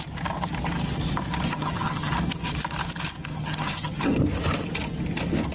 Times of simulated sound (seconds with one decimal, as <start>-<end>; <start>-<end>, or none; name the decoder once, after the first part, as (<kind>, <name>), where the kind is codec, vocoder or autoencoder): 1.5-2.1 (vocoder, HiFi-GAN); 3.3-4.2